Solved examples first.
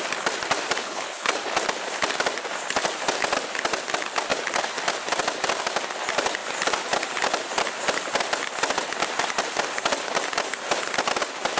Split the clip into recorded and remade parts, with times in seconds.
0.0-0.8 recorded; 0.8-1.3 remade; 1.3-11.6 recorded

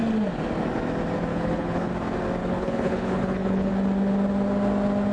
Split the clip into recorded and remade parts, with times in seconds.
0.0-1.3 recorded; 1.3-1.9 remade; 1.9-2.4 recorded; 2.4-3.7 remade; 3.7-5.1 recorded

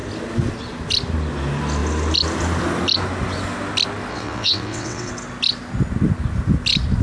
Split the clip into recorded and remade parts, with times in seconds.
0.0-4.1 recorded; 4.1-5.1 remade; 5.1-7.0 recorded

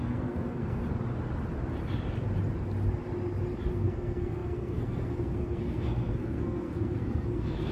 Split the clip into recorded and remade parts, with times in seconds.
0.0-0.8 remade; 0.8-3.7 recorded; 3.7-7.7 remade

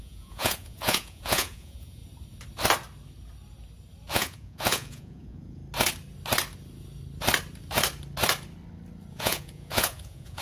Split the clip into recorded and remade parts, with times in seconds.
0.0-2.0 remade; 2.0-4.1 recorded; 4.1-5.6 remade; 5.6-9.1 recorded; 9.1-10.4 remade

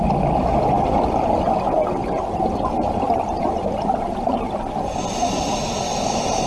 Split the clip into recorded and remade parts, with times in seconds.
0.0-2.0 recorded; 2.0-5.5 remade; 5.5-6.5 recorded

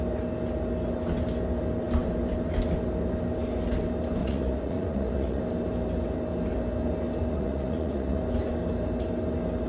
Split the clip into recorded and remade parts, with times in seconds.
0.0-4.2 recorded; 4.2-5.4 remade; 5.4-7.3 recorded; 7.3-8.2 remade; 8.2-9.7 recorded

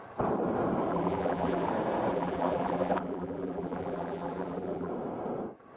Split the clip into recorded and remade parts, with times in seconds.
0.0-0.9 recorded; 0.9-1.7 remade; 1.7-2.1 recorded; 2.1-4.9 remade; 4.9-5.8 recorded